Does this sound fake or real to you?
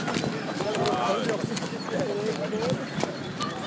real